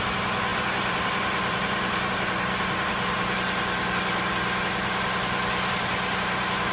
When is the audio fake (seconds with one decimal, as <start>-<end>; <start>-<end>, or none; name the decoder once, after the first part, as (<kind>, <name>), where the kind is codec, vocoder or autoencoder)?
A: 0.5-2.1 (vocoder, BigVGAN v2)